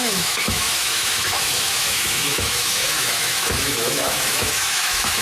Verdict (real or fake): fake